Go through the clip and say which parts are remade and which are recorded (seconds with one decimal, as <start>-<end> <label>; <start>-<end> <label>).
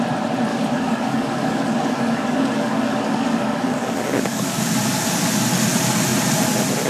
0.0-0.5 recorded; 0.5-4.6 remade; 4.6-6.9 recorded